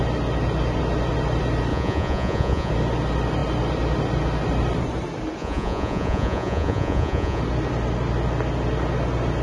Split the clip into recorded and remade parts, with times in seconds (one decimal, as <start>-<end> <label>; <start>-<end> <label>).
0.0-1.7 recorded; 1.7-2.7 remade; 2.7-5.4 recorded; 5.4-7.4 remade; 7.4-9.4 recorded